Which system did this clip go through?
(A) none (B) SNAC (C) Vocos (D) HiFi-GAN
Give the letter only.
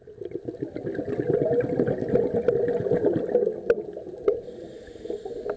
A